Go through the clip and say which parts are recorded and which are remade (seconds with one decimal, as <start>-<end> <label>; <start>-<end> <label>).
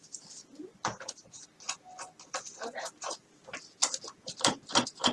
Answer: 0.0-0.4 remade; 0.4-2.7 recorded; 2.7-5.1 remade